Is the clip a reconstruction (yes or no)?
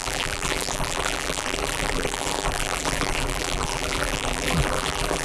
yes